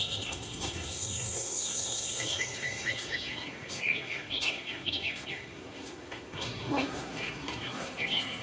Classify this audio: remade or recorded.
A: remade